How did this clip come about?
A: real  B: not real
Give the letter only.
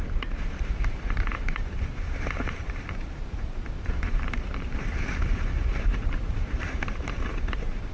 B